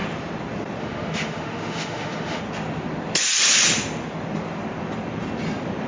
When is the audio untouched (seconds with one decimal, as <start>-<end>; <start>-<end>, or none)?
0.0-0.8; 2.4-5.9